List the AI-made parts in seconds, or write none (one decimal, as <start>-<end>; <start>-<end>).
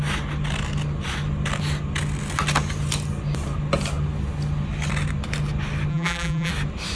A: 5.9-6.5